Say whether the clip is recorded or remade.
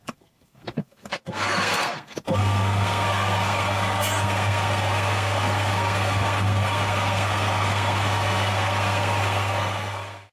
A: remade